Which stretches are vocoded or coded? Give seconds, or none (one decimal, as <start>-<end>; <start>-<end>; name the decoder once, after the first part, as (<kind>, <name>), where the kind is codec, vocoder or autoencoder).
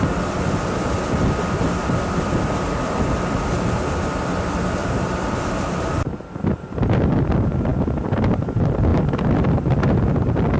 4.8-7.1 (vocoder, BigVGAN v2); 8.9-10.1